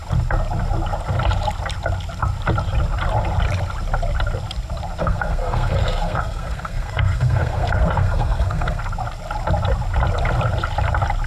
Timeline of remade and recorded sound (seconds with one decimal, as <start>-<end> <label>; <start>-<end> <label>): 0.0-5.0 recorded; 5.0-8.8 remade; 8.8-11.3 recorded

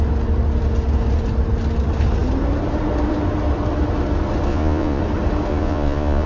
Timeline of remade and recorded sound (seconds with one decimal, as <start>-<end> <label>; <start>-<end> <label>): 0.0-4.5 recorded; 4.5-5.0 remade; 5.0-5.5 recorded; 5.5-6.3 remade

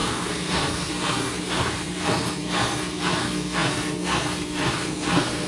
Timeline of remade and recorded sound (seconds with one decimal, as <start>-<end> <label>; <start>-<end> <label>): 0.0-5.5 remade

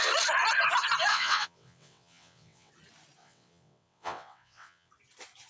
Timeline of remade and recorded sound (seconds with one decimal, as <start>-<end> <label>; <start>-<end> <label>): 0.0-1.1 recorded; 1.1-2.7 remade; 2.7-3.2 recorded; 3.2-4.9 remade; 4.9-5.5 recorded

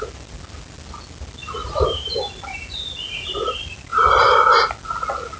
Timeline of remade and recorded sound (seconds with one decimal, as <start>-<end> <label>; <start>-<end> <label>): 0.0-1.6 recorded; 1.6-2.2 remade; 2.2-3.9 recorded; 3.9-4.5 remade; 4.5-5.4 recorded

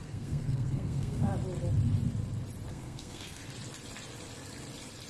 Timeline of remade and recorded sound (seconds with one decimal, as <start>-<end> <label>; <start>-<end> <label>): 0.0-1.3 remade; 1.3-2.7 recorded; 2.7-3.4 remade; 3.4-5.1 recorded

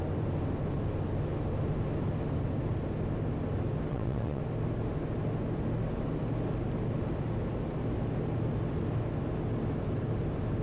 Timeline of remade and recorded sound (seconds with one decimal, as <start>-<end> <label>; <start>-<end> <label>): 0.0-3.9 recorded; 3.9-4.4 remade; 4.4-10.6 recorded